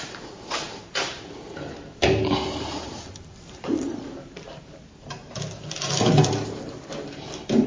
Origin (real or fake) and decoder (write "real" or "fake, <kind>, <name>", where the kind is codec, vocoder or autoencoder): fake, vocoder, BigVGAN v2